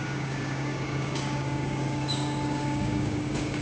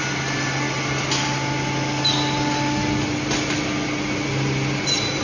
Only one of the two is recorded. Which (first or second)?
second